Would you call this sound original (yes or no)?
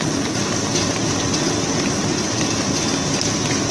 yes